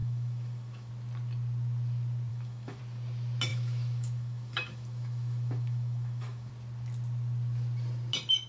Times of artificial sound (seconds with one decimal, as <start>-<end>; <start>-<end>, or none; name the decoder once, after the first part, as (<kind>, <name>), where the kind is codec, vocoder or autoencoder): 0.0-0.9 (autoencoder, DAC-VAE); 2.3-2.8; 3.5-6.5